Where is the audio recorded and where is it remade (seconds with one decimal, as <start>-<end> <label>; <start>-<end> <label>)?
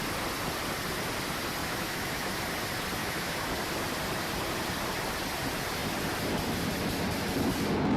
0.0-1.6 recorded; 1.6-2.4 remade; 2.4-3.0 recorded; 3.0-3.5 remade; 3.5-8.0 recorded